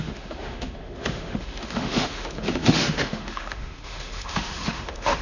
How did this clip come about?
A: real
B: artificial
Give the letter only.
B